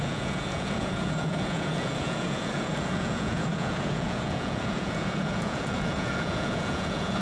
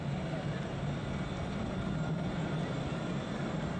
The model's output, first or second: first